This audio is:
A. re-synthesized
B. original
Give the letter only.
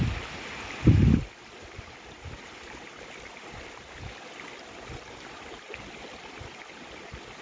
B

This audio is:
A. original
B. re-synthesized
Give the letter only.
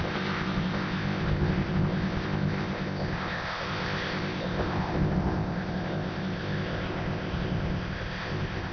B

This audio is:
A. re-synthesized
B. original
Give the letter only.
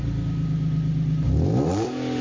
B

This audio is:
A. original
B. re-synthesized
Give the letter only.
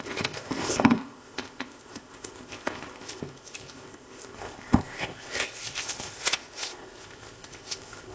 B